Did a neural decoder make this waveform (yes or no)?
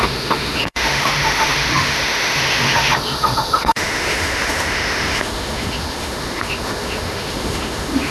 yes